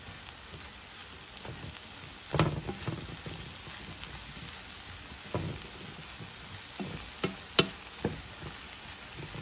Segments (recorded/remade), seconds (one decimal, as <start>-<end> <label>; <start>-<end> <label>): 0.0-9.4 recorded

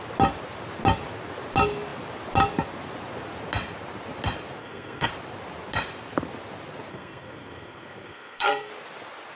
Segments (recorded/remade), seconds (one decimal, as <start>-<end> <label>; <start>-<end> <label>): 0.0-4.6 recorded; 4.6-5.1 remade; 5.1-6.9 recorded; 6.9-8.7 remade; 8.7-9.4 recorded